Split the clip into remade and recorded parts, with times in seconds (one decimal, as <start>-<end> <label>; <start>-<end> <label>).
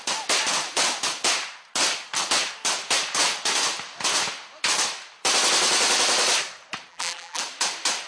0.0-6.9 recorded; 6.9-7.4 remade; 7.4-8.1 recorded